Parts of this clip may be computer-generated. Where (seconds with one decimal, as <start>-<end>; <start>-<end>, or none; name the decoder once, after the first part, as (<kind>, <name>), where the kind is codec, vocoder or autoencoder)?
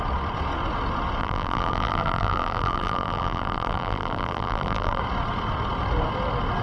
1.2-5.0 (vocoder, BigVGAN v2)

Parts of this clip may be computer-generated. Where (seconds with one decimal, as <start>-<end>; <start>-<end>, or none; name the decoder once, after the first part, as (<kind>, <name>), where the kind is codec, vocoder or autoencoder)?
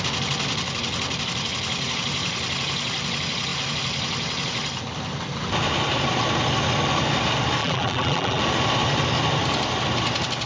7.6-8.4 (vocoder, BigVGAN v2)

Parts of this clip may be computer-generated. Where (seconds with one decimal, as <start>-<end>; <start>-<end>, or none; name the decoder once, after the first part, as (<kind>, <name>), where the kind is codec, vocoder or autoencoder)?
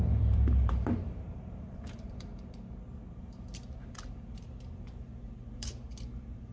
0.0-2.3 (vocoder, BigVGAN v2); 3.1-6.5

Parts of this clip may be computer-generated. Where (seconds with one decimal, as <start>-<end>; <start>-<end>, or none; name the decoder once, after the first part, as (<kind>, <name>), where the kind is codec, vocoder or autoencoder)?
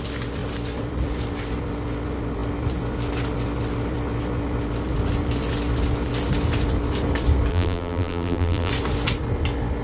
7.5-8.7 (vocoder, BigVGAN v2)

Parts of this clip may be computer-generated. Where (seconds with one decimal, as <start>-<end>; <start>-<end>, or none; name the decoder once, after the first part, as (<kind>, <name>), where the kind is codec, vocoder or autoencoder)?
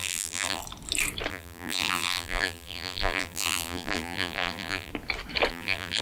0.0-0.6 (vocoder, BigVGAN v2); 1.3-4.9; 5.5-6.0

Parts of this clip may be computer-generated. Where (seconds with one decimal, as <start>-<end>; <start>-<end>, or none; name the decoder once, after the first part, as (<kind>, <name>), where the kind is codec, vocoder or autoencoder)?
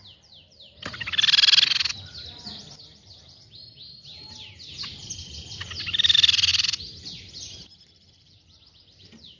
1.9-2.6 (vocoder, BigVGAN v2)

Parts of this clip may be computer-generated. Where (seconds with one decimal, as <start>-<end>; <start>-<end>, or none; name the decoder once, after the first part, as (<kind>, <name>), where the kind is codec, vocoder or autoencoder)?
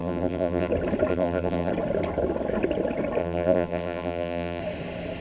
0.0-0.7 (vocoder, BigVGAN v2); 1.1-1.7; 3.2-4.6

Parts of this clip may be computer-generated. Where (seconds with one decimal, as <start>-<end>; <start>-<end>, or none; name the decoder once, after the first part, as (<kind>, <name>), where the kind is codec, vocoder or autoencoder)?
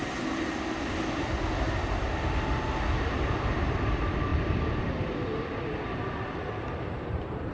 2.0-4.3 (vocoder, BigVGAN v2); 4.8-7.5